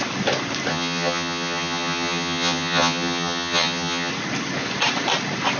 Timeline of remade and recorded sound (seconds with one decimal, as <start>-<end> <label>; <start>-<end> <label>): 0.0-0.7 recorded; 0.7-4.1 remade; 4.1-5.6 recorded